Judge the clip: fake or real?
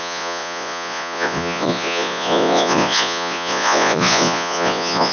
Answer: fake